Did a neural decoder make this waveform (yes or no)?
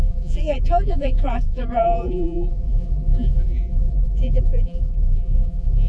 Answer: yes